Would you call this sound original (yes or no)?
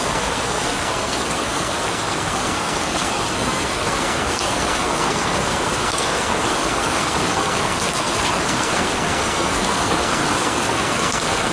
no